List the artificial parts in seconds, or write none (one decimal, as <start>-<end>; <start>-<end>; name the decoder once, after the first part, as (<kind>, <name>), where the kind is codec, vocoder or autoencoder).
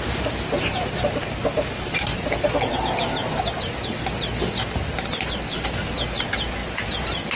none